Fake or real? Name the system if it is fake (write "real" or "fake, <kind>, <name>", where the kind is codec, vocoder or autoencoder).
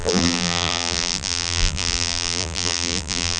fake, vocoder, BigVGAN v2